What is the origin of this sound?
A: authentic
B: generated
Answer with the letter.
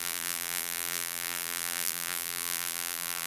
B